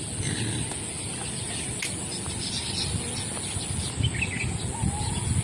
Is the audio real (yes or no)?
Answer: yes